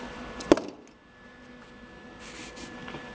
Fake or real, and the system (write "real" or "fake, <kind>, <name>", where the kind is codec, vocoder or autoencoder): real